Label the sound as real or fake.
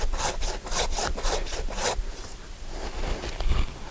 real